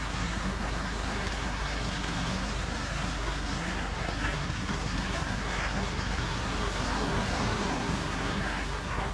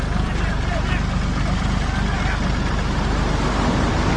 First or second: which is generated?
first